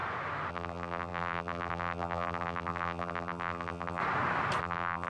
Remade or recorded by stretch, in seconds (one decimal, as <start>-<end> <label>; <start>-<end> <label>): 0.0-0.5 recorded; 0.5-4.0 remade; 4.0-4.6 recorded; 4.6-5.1 remade